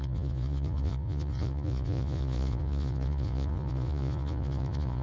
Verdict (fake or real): fake